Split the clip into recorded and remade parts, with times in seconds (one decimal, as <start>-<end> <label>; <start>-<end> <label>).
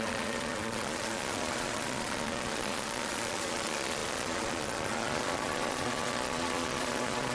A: 0.0-7.3 remade